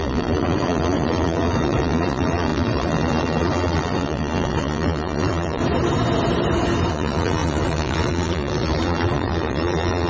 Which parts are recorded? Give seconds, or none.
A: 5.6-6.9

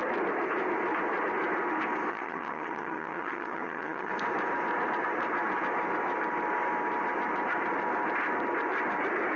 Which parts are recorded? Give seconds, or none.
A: 0.0-2.1; 4.1-9.4

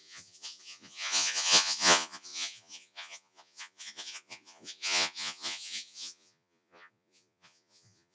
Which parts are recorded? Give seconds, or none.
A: none

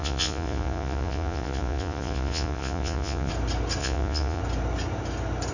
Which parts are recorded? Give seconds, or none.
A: 3.3-3.8; 4.4-5.5

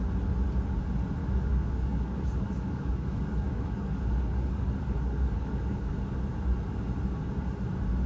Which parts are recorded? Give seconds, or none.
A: 0.0-1.2; 6.1-8.1

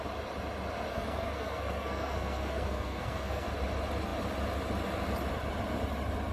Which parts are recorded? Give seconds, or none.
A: 0.0-0.9; 3.5-6.3

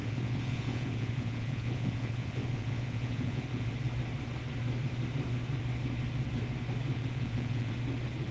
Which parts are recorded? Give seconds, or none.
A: 3.7-6.9; 7.7-8.3